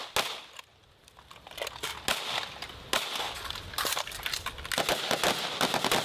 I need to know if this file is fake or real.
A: real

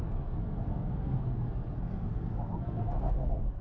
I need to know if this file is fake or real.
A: fake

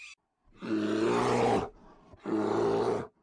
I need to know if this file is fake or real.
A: real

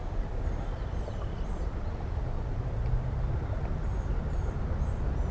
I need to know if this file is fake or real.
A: real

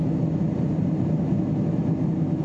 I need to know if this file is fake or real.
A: real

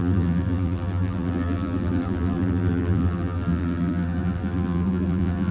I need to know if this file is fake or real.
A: fake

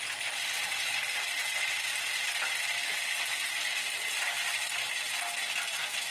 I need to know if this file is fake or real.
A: real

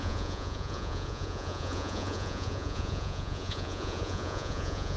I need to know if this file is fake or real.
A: fake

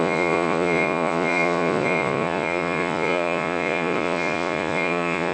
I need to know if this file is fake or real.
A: fake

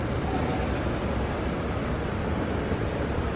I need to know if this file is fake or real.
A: real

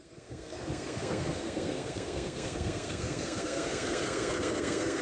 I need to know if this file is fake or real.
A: fake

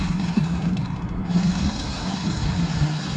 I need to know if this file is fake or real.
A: fake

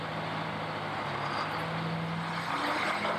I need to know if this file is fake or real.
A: real